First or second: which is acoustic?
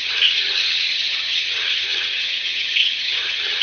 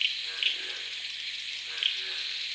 second